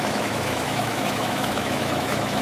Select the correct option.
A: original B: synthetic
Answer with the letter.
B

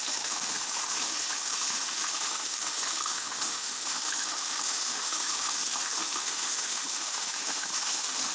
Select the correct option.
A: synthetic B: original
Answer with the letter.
A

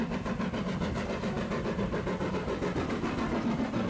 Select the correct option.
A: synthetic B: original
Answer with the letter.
B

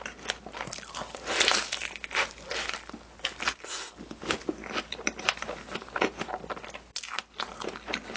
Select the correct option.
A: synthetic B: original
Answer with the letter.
B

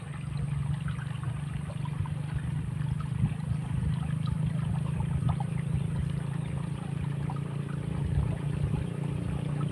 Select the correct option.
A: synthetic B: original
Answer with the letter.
B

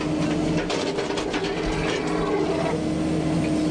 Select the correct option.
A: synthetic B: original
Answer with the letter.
B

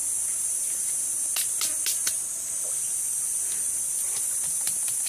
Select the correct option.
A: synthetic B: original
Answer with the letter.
B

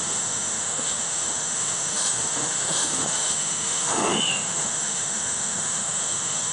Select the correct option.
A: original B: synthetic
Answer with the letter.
B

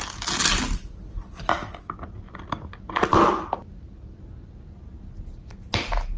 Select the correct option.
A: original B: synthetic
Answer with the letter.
A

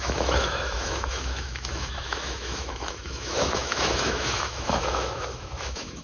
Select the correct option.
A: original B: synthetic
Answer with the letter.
B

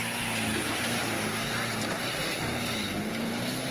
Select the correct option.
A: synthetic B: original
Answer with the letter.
B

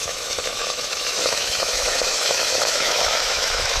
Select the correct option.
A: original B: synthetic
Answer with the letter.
B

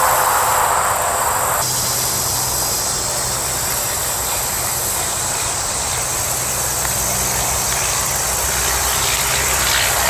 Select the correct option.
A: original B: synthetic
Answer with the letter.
A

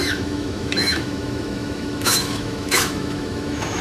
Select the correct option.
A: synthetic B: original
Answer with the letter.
A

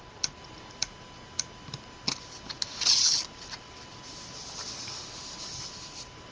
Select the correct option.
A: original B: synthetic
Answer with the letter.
A